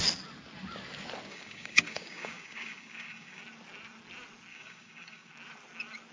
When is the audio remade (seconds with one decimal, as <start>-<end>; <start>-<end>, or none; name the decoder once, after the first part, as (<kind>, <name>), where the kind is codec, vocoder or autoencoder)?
1.3-3.4 (codec, DAC); 4.5-5.3